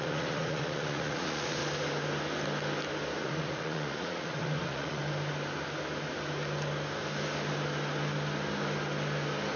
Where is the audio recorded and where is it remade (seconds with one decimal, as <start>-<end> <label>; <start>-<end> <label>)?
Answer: 0.0-1.6 remade; 1.6-3.2 recorded; 3.2-5.0 remade; 5.0-9.6 recorded